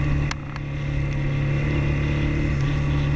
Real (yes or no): yes